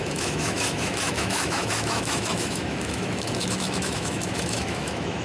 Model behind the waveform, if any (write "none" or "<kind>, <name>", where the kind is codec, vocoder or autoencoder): autoencoder, DAC-VAE